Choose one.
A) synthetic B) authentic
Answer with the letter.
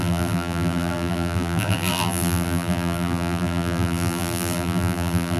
A